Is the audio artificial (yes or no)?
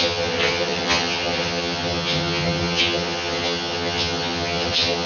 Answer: yes